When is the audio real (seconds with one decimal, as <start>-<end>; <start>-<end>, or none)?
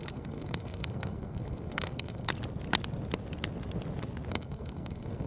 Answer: 2.3-4.3